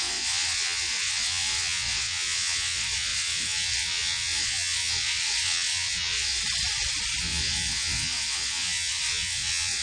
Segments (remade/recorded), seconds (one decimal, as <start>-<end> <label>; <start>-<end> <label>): 0.0-6.4 remade; 6.4-7.2 recorded; 7.2-9.8 remade